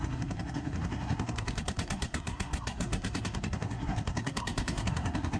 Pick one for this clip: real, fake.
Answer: fake